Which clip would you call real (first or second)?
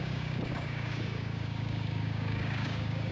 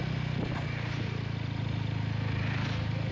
second